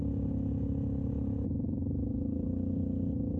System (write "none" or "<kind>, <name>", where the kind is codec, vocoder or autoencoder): none